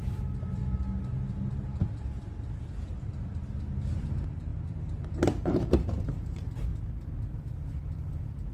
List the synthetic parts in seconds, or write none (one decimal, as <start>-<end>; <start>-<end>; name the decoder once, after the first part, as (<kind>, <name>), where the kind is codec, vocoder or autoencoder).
0.0-0.6 (vocoder, BigVGAN v2); 2.8-6.7; 7.9-8.5